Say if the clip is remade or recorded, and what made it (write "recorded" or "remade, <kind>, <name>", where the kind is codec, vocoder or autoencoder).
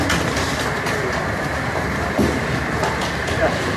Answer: recorded